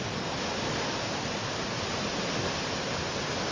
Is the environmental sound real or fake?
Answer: real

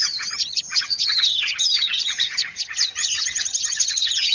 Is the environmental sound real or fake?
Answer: fake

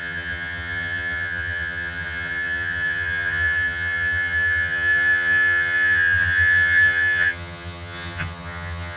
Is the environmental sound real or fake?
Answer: fake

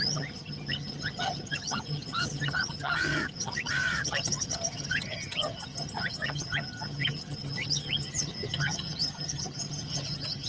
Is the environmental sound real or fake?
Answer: fake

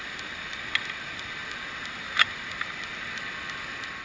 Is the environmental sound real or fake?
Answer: real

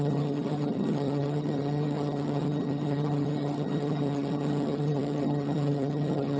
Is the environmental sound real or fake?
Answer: fake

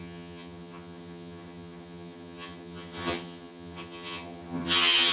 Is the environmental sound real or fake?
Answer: fake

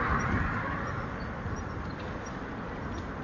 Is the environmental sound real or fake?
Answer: real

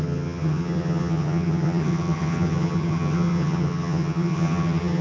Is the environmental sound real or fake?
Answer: fake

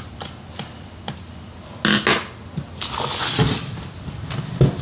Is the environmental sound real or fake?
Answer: real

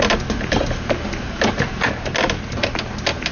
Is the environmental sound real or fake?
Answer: real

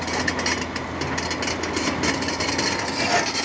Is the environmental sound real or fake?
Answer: real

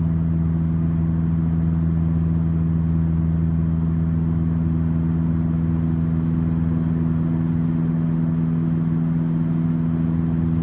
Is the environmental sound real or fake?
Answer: real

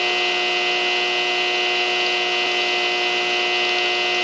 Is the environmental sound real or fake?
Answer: real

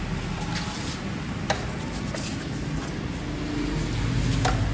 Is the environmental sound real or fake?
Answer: real